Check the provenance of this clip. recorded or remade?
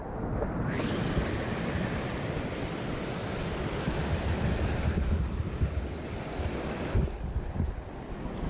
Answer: recorded